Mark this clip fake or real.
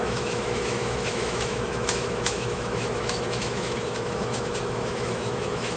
fake